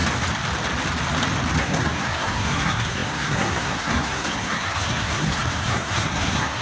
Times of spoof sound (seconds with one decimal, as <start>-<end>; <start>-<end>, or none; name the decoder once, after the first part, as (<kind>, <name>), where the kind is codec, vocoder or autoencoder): 1.6-6.6 (codec, SNAC)